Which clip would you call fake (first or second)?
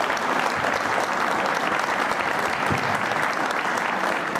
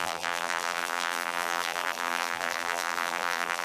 second